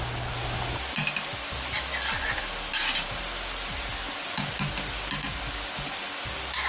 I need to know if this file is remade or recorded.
recorded